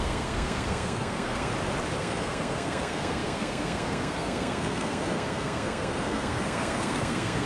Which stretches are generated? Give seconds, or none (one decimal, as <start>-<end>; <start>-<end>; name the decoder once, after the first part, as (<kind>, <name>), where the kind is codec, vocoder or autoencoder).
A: 0.0-1.5 (codec, SNAC); 2.0-7.5